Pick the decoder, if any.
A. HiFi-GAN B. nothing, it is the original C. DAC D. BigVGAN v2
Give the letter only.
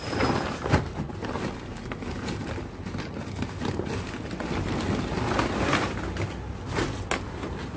B